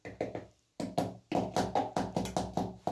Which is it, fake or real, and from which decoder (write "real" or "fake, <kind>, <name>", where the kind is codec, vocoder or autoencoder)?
real